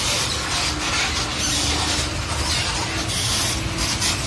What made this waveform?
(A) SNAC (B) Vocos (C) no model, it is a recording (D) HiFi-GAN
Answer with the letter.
C